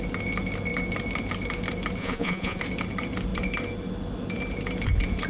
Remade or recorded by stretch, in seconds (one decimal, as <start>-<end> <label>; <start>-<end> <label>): 0.0-2.0 recorded; 2.0-2.6 remade; 2.6-5.3 recorded